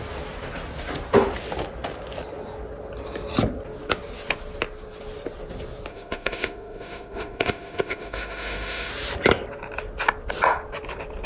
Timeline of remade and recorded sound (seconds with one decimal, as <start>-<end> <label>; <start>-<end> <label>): 0.0-5.9 recorded; 5.9-8.9 remade; 8.9-11.3 recorded